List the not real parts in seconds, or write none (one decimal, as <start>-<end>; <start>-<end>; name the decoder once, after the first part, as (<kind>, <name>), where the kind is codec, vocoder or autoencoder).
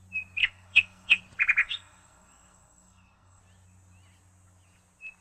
0.4-1.2 (codec, SNAC); 1.6-3.4